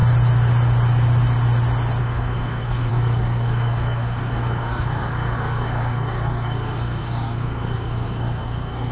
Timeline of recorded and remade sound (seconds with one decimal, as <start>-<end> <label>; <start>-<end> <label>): 0.0-2.0 recorded; 2.0-8.9 remade